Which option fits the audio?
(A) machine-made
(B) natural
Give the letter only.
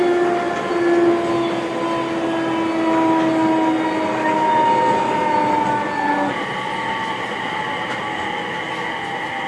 B